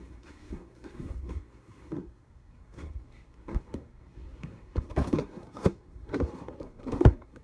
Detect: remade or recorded remade